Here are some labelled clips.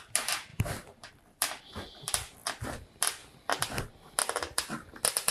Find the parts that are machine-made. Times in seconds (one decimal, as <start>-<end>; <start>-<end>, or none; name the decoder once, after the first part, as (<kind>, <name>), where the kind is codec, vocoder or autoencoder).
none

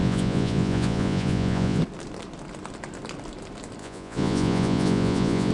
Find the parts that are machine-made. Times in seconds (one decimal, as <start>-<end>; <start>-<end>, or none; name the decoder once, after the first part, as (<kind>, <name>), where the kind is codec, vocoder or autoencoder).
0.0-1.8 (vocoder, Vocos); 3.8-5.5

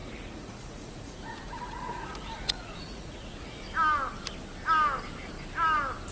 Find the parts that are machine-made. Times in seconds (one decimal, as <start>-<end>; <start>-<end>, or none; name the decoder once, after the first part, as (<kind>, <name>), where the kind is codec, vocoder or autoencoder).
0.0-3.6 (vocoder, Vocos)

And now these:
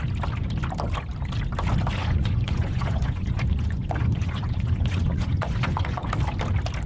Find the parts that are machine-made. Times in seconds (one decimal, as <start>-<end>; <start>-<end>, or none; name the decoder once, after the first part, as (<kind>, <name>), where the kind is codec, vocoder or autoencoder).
2.0-6.1 (vocoder, Vocos)

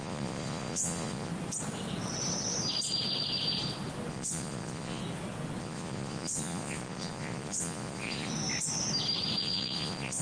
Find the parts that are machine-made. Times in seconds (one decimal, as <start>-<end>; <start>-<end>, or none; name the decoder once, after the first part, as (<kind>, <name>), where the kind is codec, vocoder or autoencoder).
0.0-1.3 (vocoder, Vocos); 4.1-5.0; 5.6-8.3; 9.4-10.2